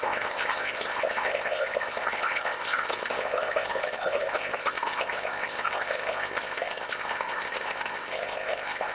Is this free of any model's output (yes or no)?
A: no